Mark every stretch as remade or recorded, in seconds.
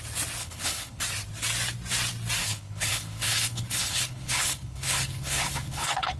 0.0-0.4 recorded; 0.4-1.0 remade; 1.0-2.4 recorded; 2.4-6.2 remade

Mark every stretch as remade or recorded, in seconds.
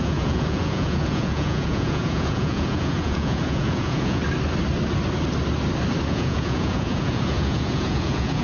0.0-4.2 remade; 4.2-6.1 recorded; 6.1-8.4 remade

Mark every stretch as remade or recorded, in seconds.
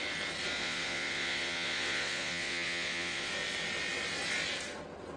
0.0-0.6 recorded; 0.6-3.3 remade; 3.3-5.2 recorded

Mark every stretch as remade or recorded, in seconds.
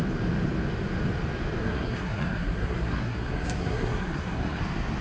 0.0-1.6 recorded; 1.6-4.6 remade; 4.6-5.0 recorded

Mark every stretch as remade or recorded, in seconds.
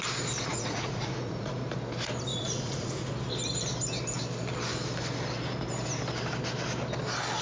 0.0-0.5 recorded; 0.5-1.6 remade; 1.6-2.3 recorded; 2.3-3.1 remade; 3.1-7.4 recorded